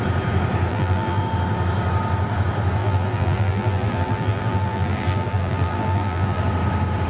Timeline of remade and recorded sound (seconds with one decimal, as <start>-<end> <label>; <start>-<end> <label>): 0.0-0.7 recorded; 0.7-1.2 remade; 1.2-2.8 recorded; 2.8-6.4 remade; 6.4-7.1 recorded